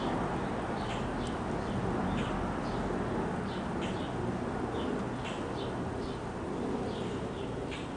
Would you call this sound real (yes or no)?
yes